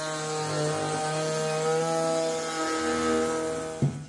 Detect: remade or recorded recorded